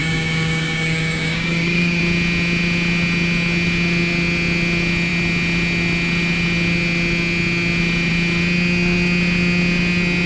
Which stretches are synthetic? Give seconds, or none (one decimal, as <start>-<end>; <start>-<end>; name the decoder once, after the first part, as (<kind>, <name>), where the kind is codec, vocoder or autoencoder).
0.0-2.0 (codec, DAC)